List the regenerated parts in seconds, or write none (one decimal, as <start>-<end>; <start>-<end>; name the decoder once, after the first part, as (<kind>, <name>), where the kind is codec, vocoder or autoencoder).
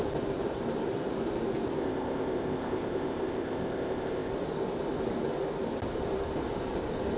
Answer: 1.8-4.3 (codec, ZipCodec)